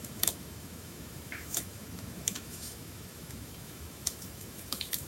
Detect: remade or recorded remade